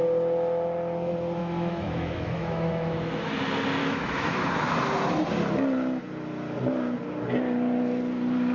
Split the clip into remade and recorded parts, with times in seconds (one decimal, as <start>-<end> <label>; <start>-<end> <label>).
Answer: 0.0-1.4 recorded; 1.4-3.3 remade; 3.3-3.8 recorded; 3.8-4.5 remade; 4.5-8.5 recorded